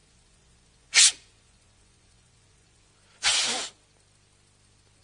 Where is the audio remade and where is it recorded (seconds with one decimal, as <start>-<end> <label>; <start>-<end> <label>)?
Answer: 0.0-2.9 remade; 2.9-5.0 recorded